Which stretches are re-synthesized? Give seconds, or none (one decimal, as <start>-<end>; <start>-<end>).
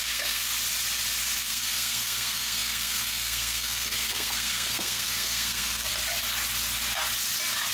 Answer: 0.0-0.5; 1.4-5.9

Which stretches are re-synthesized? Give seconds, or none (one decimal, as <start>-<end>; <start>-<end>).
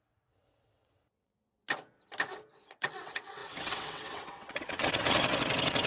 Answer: 0.0-1.6; 2.5-5.9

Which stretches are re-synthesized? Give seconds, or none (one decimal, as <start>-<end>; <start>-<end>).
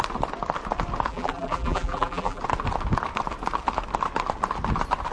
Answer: 1.1-2.4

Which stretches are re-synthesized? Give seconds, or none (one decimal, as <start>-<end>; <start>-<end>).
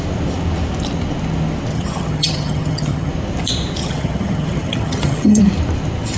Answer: 1.7-3.1; 3.8-5.4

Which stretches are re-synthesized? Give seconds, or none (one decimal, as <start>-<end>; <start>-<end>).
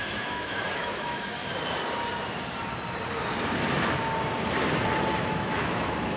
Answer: 0.0-1.4; 5.1-6.2